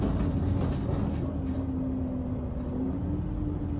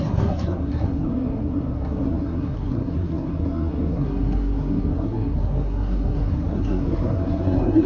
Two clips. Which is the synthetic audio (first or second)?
second